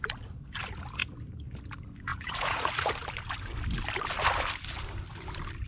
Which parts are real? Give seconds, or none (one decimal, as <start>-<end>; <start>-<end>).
0.0-2.1; 2.9-5.7

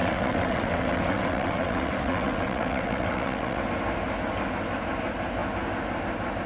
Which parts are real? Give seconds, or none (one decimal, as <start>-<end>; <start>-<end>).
3.6-6.5

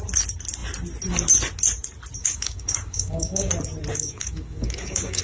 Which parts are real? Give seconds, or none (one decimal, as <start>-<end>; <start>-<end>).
0.0-2.2; 3.5-3.9

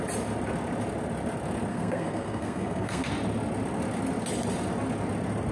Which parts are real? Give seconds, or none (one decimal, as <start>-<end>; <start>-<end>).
0.0-1.7; 3.1-5.5